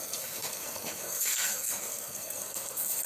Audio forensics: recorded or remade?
remade